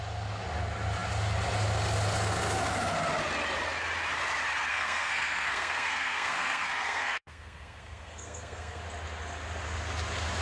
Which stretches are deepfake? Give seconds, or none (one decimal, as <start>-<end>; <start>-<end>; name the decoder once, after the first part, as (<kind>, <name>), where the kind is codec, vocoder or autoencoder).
4.7-8.8 (codec, SNAC)